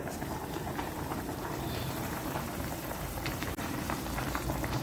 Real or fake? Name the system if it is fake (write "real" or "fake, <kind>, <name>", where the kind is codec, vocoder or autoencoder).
fake, vocoder, BigVGAN v2